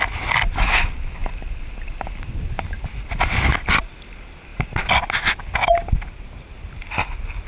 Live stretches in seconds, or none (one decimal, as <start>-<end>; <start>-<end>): 0.0-1.2; 3.5-7.5